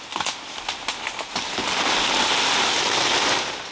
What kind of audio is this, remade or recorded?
recorded